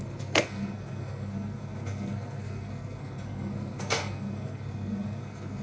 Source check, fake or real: fake